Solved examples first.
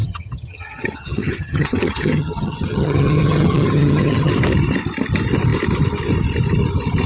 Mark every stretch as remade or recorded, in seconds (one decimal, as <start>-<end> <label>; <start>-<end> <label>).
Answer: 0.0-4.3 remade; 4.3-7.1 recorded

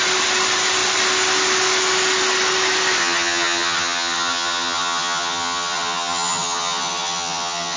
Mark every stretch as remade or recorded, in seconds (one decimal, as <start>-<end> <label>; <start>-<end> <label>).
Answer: 0.0-3.0 recorded; 3.0-7.8 remade

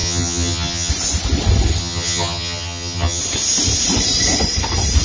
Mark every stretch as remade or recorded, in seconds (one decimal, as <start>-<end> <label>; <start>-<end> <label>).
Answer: 0.0-0.9 remade; 0.9-1.8 recorded; 1.8-3.2 remade; 3.2-5.0 recorded

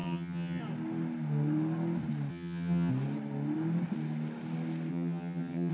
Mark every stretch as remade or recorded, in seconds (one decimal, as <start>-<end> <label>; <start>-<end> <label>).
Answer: 0.0-0.6 remade; 0.6-2.3 recorded; 2.3-2.9 remade; 2.9-4.9 recorded; 4.9-5.7 remade

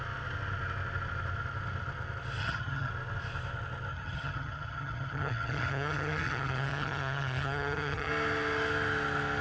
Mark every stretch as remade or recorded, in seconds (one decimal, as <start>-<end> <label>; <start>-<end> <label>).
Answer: 0.0-2.4 recorded; 2.4-2.9 remade; 2.9-3.9 recorded; 3.9-8.1 remade; 8.1-9.4 recorded

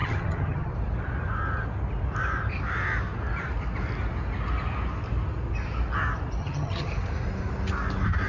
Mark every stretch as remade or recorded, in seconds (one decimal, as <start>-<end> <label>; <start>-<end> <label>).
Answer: 0.0-0.7 remade; 0.7-6.4 recorded; 6.4-6.9 remade; 6.9-8.3 recorded

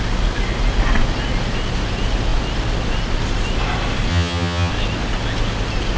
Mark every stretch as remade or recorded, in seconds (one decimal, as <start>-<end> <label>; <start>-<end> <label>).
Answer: 0.0-4.1 recorded; 4.1-4.7 remade; 4.7-6.0 recorded

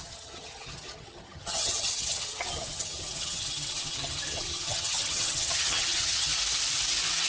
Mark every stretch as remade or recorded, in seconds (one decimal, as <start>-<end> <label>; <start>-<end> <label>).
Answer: 0.0-6.3 remade; 6.3-7.3 recorded